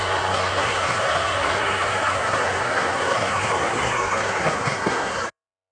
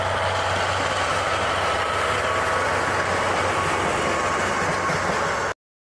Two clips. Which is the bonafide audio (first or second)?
second